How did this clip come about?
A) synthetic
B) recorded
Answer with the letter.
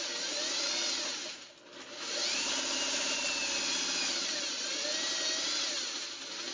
B